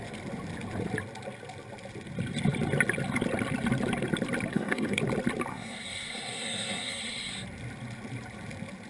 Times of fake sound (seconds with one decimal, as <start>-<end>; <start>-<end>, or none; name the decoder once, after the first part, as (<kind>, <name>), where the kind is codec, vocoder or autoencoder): 4.5-5.0 (codec, SNAC); 5.5-7.3